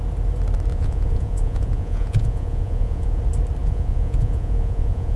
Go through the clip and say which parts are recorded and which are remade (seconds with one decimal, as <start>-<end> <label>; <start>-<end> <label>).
0.0-0.7 recorded; 0.7-3.2 remade; 3.2-3.6 recorded; 3.6-5.2 remade